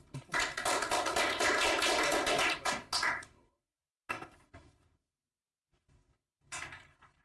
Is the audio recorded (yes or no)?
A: yes